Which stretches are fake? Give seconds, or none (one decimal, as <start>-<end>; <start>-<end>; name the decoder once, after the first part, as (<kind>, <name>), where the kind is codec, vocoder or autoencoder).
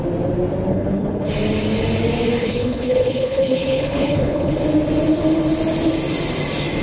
0.7-1.3 (codec, HILCodec); 2.4-4.6